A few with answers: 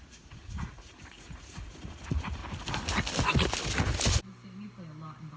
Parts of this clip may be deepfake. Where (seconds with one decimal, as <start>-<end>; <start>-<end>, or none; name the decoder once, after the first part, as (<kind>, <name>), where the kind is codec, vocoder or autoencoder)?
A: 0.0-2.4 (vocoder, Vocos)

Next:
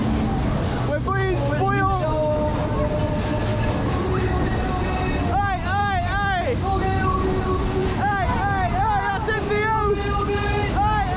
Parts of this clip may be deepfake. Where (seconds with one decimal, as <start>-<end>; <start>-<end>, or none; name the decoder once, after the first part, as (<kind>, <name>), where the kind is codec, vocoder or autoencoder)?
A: none

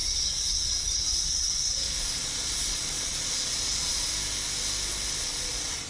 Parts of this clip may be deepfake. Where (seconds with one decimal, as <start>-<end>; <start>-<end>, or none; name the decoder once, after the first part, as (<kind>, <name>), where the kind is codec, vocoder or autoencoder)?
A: 0.0-4.1 (vocoder, Vocos); 5.2-5.9

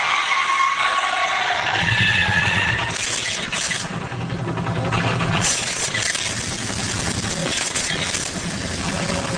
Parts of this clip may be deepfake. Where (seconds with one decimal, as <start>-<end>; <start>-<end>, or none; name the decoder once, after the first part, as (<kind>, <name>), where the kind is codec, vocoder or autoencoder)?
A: 1.2-2.7 (vocoder, Vocos); 5.3-5.9; 7.4-8.0

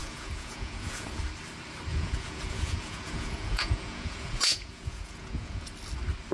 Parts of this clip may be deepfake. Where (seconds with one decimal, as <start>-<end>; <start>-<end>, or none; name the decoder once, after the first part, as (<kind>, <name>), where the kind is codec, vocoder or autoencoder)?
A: 0.0-1.2 (vocoder, Vocos); 1.9-5.7

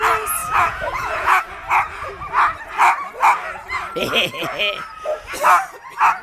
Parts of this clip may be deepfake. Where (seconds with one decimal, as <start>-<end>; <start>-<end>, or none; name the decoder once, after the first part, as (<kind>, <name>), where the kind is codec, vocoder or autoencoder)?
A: 0.4-1.4 (vocoder, Vocos)